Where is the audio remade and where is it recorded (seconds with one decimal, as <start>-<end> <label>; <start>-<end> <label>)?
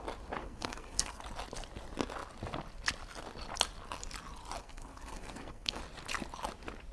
0.0-0.4 recorded; 0.4-1.2 remade; 1.2-4.6 recorded; 4.6-5.8 remade; 5.8-6.9 recorded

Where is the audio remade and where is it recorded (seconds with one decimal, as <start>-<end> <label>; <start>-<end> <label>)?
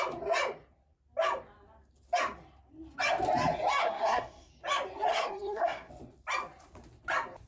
0.0-3.8 recorded; 3.8-4.5 remade; 4.5-5.1 recorded; 5.1-5.9 remade; 5.9-7.5 recorded